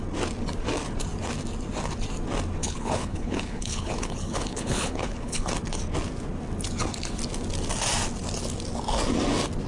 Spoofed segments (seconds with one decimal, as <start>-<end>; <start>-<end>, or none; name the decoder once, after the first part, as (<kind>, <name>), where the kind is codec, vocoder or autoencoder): 2.6-5.5 (codec, HILCodec)